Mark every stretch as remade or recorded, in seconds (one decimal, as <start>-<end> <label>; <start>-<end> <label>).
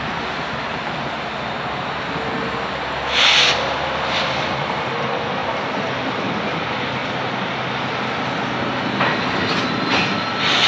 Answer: 0.0-10.7 recorded